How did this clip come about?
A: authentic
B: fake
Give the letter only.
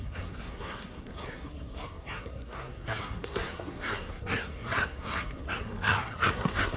B